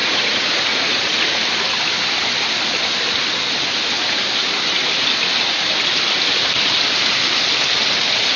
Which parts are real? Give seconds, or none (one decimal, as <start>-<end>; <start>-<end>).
1.3-8.4